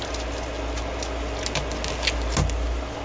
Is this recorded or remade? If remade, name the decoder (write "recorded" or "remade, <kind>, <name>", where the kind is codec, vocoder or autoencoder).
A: recorded